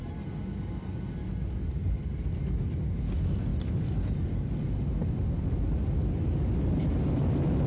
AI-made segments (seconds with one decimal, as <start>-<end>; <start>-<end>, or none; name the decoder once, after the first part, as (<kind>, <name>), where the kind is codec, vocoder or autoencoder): none